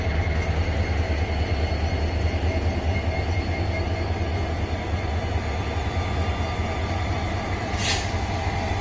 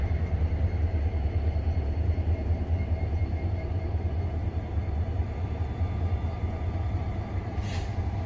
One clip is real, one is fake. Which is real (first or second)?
first